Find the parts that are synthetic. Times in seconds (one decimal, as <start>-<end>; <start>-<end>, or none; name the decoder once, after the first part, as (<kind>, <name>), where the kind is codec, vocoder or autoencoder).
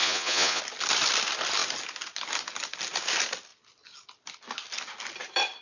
0.0-0.6 (vocoder, Vocos)